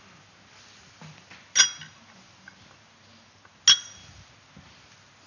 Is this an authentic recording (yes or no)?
yes